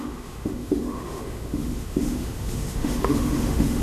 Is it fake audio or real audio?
fake